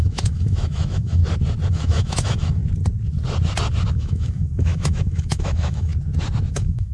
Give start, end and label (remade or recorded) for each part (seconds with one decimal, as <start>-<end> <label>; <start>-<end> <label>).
0.0-1.2 remade; 1.2-1.7 recorded; 1.7-2.6 remade; 2.6-3.9 recorded; 3.9-5.9 remade; 5.9-6.5 recorded; 6.5-6.9 remade